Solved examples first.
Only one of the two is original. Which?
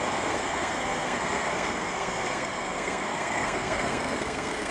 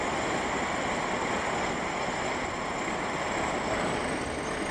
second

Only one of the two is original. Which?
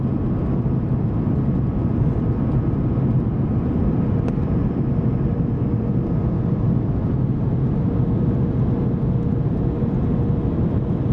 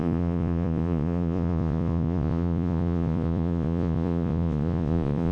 first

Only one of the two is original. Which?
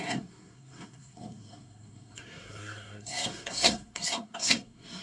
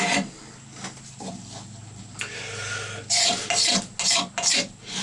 second